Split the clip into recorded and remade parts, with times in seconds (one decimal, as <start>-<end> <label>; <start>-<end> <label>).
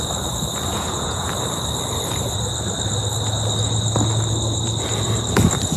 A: 0.0-0.7 recorded; 0.7-1.3 remade; 1.3-5.8 recorded